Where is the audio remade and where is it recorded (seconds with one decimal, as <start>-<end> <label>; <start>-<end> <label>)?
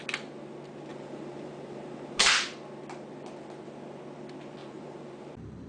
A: 0.0-0.9 recorded; 0.9-2.2 remade; 2.2-4.6 recorded; 4.6-5.3 remade; 5.3-5.7 recorded